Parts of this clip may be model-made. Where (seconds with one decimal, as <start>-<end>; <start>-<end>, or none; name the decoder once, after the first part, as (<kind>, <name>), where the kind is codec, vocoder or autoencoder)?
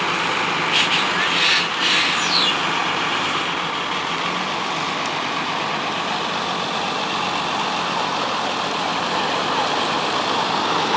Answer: 2.8-3.4 (vocoder, BigVGAN v2)